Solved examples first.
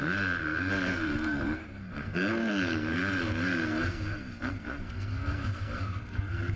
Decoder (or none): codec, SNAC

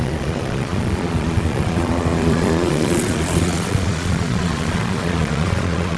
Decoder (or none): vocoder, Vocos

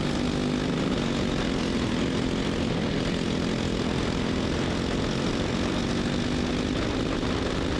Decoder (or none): none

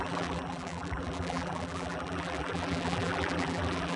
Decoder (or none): vocoder, BigVGAN v2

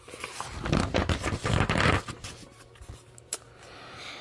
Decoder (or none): none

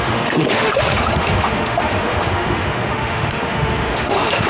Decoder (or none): autoencoder, DAC-VAE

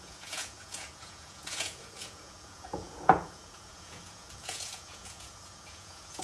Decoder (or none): vocoder, Vocos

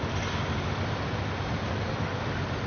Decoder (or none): none